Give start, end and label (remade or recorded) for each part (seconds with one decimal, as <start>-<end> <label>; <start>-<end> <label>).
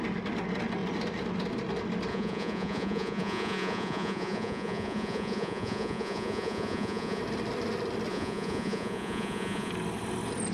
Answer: 0.0-2.1 recorded; 2.1-7.2 remade; 7.2-8.1 recorded; 8.1-9.7 remade; 9.7-10.5 recorded